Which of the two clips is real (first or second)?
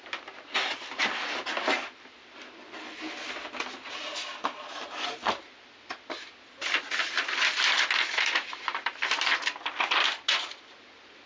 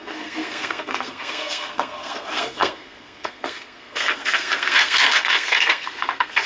first